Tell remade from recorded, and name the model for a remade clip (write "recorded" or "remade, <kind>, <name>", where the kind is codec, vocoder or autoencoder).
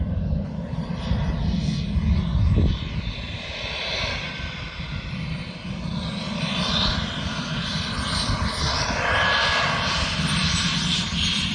recorded